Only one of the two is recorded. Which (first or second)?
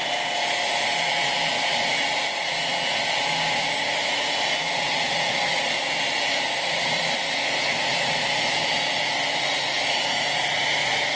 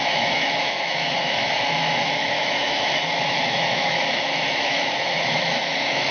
first